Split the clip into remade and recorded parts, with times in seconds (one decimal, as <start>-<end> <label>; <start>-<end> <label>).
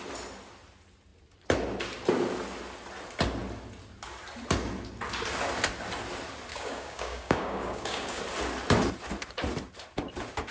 0.0-6.5 recorded; 6.5-8.2 remade; 8.2-10.5 recorded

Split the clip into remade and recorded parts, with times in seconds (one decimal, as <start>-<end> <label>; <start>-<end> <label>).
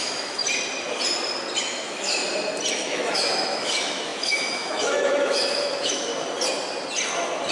0.0-0.4 remade; 0.4-1.6 recorded; 1.6-2.2 remade; 2.2-2.7 recorded; 2.7-6.1 remade; 6.1-7.5 recorded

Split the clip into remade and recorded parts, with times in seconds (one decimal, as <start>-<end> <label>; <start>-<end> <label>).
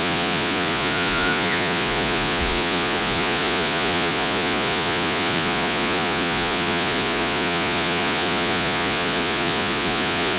0.0-10.4 remade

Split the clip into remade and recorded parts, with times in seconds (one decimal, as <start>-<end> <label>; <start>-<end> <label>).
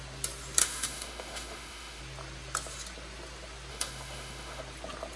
0.0-0.6 recorded; 0.6-2.0 remade; 2.0-3.7 recorded; 3.7-4.6 remade; 4.6-5.2 recorded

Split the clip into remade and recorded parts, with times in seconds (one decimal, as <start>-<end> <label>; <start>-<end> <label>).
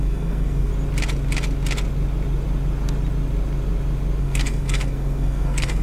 0.0-0.7 remade; 0.7-4.2 recorded; 4.2-5.8 remade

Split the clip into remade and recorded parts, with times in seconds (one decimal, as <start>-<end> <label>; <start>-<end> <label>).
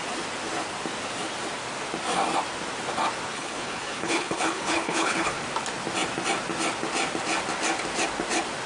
0.0-3.3 recorded; 3.3-5.4 remade; 5.4-8.7 recorded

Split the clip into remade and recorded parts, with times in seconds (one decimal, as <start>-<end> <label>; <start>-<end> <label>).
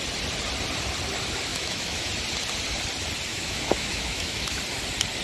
0.0-1.5 recorded; 1.5-2.1 remade; 2.1-3.3 recorded; 3.3-4.6 remade; 4.6-5.2 recorded